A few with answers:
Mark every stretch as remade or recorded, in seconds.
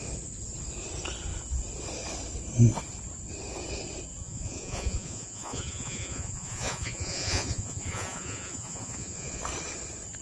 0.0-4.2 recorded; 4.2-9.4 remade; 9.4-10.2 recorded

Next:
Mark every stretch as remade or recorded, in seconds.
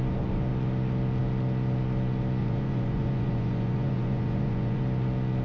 0.0-2.4 recorded; 2.4-4.8 remade; 4.8-5.4 recorded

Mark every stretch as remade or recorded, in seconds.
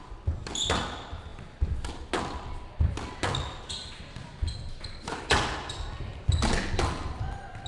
0.0-7.7 recorded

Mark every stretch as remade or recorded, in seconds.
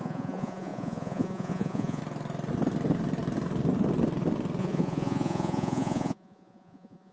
0.0-2.0 remade; 2.0-4.6 recorded; 4.6-7.1 remade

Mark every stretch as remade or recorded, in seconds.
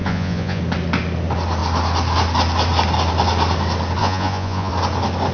0.0-0.6 remade; 0.6-4.0 recorded; 4.0-4.7 remade; 4.7-5.3 recorded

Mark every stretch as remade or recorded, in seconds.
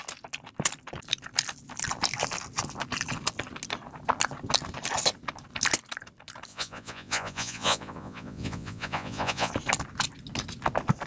0.0-6.5 recorded; 6.5-9.5 remade; 9.5-11.1 recorded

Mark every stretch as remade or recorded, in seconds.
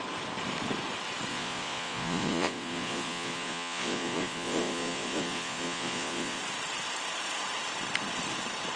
0.0-1.3 recorded; 1.3-6.4 remade; 6.4-8.8 recorded